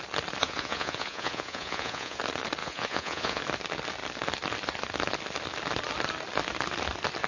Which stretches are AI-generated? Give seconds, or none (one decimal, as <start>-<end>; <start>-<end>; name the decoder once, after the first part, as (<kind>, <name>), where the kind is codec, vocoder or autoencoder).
0.4-2.2 (vocoder, Vocos); 2.6-3.4